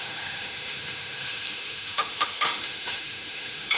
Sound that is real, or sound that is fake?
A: fake